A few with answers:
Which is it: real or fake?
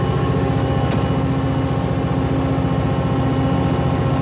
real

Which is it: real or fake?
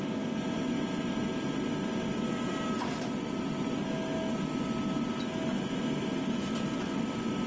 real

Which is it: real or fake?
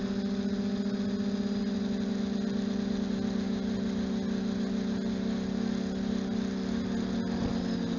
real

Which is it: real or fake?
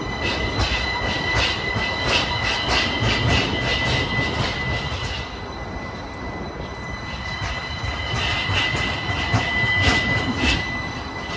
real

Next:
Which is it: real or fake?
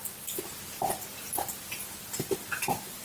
real